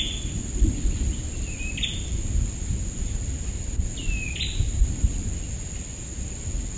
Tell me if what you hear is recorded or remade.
recorded